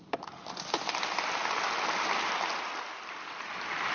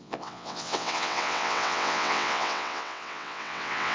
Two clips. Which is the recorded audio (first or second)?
first